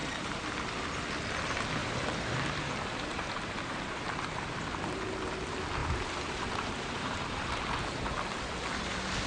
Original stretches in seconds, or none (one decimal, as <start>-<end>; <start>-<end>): 0.5-1.8; 4.7-5.8; 7.6-9.3